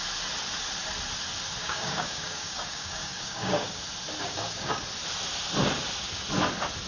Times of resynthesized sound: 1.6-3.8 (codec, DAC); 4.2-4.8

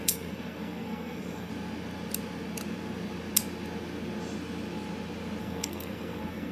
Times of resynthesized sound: 0.0-1.5 (codec, SNAC); 5.4-6.5

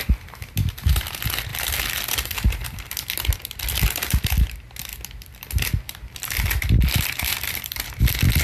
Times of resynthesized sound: 1.5-2.1 (vocoder, BigVGAN v2); 4.9-8.0

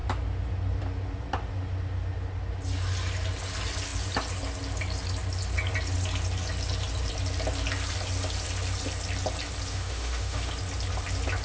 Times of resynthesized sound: 9.7-10.5 (autoencoder, DAC-VAE)

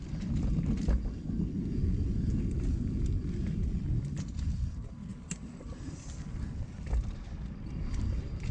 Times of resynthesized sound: none

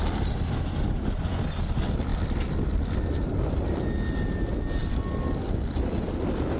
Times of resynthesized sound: none